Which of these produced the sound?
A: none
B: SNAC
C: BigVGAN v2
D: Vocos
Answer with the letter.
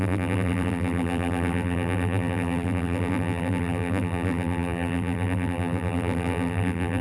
C